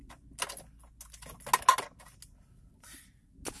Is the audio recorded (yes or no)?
yes